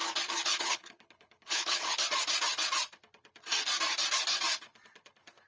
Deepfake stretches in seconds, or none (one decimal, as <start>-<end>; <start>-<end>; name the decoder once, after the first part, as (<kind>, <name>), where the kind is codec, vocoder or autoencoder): 0.5-2.0 (codec, HILCodec)